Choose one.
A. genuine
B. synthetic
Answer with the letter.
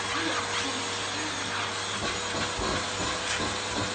A